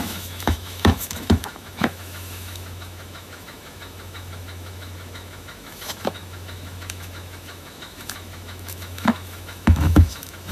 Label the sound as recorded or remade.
remade